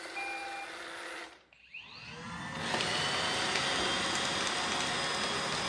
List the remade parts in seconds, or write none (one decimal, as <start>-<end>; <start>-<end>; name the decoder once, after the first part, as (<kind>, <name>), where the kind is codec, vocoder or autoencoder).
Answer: none